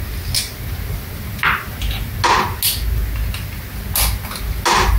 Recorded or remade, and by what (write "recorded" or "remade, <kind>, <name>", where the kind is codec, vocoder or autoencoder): recorded